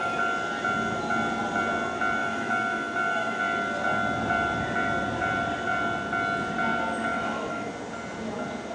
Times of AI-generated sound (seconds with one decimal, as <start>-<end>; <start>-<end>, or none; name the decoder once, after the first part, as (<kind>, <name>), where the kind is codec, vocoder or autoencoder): 2.2-3.4 (autoencoder, DAC-VAE); 7.1-7.7